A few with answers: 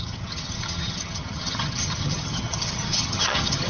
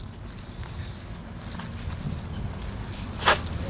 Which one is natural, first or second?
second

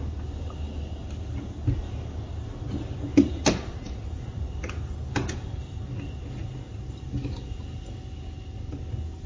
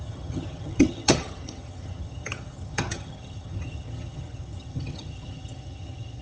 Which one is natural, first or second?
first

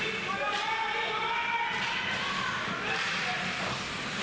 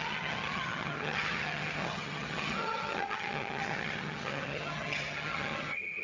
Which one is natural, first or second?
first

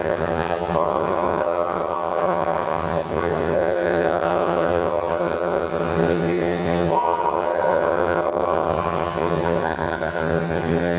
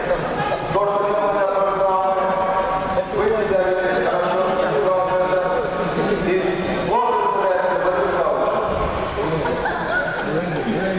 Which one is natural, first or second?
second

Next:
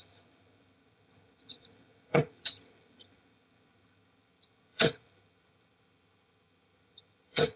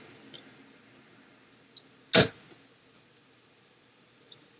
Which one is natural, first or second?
second